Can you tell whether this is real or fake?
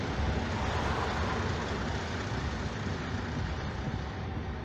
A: real